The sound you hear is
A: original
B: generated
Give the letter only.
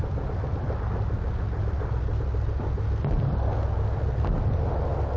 A